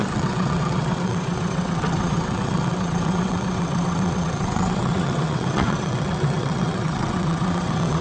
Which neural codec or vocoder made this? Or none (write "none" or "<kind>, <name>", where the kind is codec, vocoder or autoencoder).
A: vocoder, WaveNeXt